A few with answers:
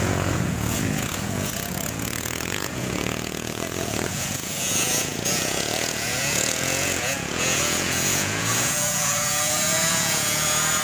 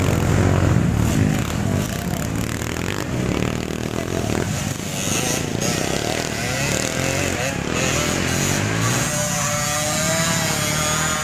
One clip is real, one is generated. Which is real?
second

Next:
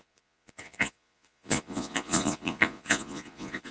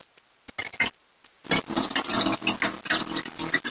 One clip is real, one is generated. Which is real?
second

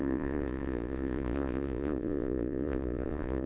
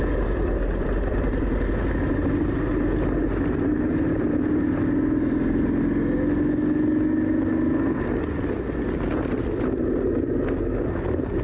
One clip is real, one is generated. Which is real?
second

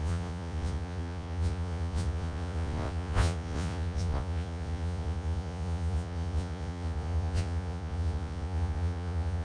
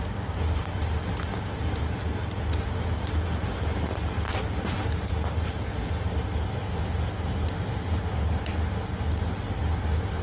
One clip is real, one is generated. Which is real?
second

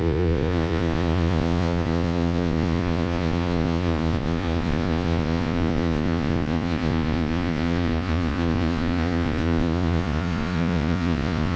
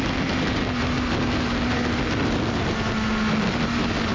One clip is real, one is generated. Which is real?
second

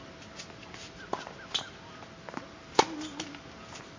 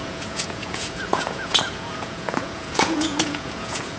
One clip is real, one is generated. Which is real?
first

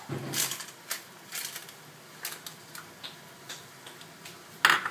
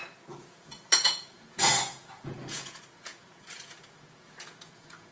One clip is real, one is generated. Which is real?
first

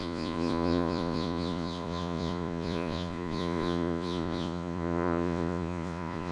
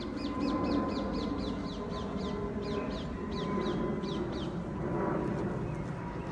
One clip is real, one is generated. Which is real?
second